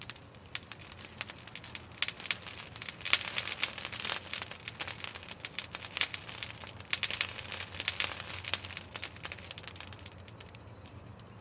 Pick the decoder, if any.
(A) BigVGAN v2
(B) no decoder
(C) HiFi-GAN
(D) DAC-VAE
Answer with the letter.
B